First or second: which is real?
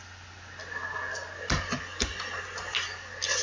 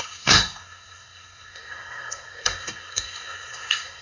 first